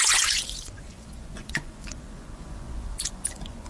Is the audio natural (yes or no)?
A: no